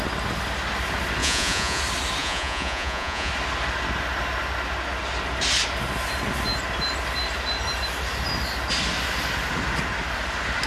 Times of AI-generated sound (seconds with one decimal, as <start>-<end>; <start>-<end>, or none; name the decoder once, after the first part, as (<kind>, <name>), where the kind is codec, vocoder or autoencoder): 1.2-1.8 (vocoder, Vocos); 2.2-3.3

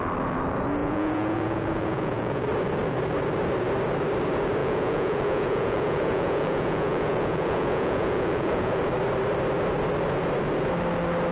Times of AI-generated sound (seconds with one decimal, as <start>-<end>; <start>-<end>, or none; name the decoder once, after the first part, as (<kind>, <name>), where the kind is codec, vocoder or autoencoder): 0.8-2.4 (vocoder, Vocos); 4.6-8.8

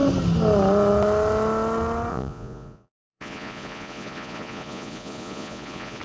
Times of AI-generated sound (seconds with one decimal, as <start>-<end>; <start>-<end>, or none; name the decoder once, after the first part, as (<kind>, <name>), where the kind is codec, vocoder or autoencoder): 2.1-6.0 (vocoder, Vocos)

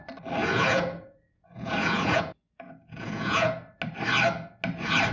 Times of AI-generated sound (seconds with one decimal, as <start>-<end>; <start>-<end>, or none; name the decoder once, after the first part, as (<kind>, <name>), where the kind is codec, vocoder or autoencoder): 0.4-3.5 (vocoder, Vocos)

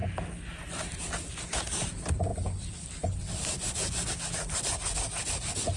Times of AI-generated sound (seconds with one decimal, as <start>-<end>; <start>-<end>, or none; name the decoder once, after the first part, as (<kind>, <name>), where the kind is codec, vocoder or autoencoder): none

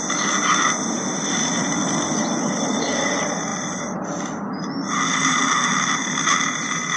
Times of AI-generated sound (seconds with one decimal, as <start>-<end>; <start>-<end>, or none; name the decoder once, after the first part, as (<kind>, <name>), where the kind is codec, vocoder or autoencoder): none

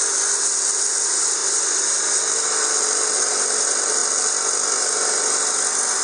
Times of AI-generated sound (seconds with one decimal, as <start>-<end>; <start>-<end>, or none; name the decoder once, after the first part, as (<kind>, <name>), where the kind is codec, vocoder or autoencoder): none

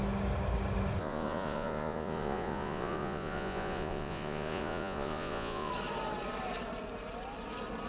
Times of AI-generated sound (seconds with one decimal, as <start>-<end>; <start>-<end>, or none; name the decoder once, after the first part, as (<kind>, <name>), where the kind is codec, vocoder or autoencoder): 1.0-5.7 (vocoder, Vocos)